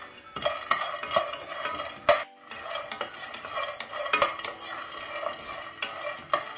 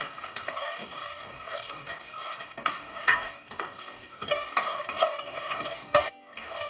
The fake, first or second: second